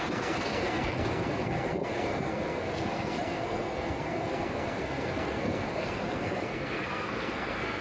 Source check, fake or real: fake